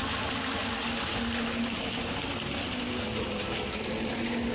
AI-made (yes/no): no